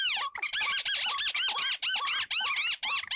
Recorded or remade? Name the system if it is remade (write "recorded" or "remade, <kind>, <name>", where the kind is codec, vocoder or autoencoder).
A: recorded